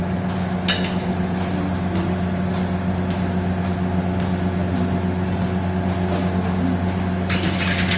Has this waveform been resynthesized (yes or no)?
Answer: no